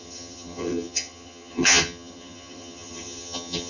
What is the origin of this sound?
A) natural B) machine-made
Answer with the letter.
B